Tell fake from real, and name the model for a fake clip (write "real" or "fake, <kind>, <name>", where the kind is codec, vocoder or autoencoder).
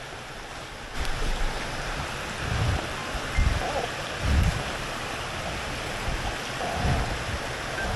real